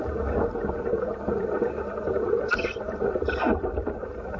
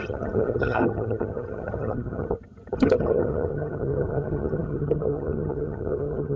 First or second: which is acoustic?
first